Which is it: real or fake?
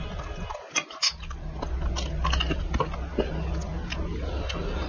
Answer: real